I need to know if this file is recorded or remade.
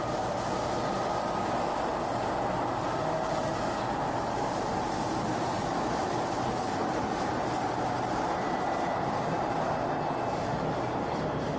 recorded